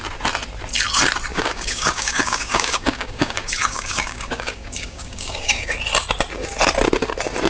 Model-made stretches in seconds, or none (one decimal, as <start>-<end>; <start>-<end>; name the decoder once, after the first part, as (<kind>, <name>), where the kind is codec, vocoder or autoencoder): 1.3-5.7 (codec, DAC)